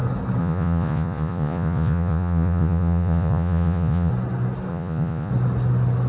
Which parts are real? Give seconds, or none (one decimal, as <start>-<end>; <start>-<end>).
0.0-0.4; 4.1-4.7; 5.3-6.1